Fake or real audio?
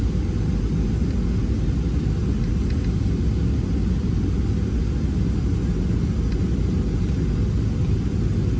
real